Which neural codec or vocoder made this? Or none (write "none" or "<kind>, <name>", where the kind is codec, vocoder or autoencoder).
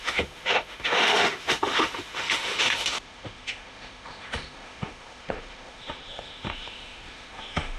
autoencoder, DAC-VAE